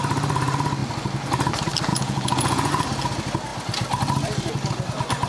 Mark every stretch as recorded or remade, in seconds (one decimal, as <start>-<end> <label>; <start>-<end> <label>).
0.0-1.9 recorded; 1.9-2.7 remade; 2.7-5.3 recorded